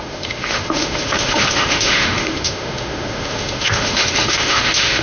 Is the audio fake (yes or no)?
yes